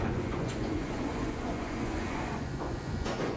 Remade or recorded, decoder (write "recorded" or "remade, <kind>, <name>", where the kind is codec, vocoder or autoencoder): remade, vocoder, Vocos